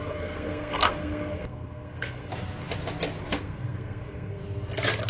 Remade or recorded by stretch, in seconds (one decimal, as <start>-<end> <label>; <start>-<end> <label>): 0.0-2.3 remade; 2.3-3.2 recorded; 3.2-4.4 remade; 4.4-5.1 recorded